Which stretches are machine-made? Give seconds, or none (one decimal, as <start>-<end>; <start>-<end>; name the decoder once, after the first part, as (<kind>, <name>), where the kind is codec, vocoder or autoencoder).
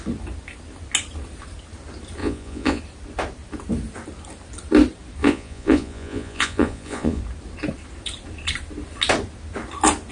2.2-2.8 (vocoder, Vocos); 5.2-7.2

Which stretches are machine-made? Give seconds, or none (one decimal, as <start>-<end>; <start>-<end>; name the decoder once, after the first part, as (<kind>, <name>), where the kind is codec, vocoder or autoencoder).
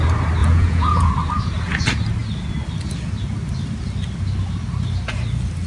0.4-1.1 (vocoder, Vocos)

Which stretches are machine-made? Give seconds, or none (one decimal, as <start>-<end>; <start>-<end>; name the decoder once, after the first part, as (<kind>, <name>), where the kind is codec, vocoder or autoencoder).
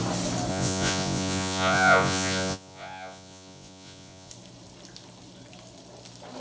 0.5-4.3 (vocoder, Vocos)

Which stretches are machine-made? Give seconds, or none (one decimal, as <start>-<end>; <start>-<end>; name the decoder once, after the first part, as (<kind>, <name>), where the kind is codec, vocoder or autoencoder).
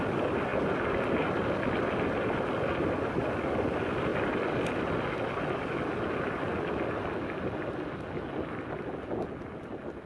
none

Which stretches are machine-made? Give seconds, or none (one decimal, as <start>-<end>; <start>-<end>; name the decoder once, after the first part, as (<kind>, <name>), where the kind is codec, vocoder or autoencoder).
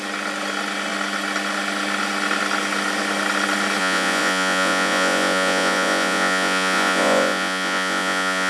3.8-8.5 (vocoder, Vocos)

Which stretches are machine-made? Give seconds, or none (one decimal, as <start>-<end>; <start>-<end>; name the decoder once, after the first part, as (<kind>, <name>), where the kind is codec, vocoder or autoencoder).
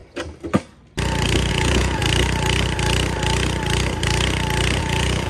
1.5-2.0 (vocoder, Vocos); 4.8-5.3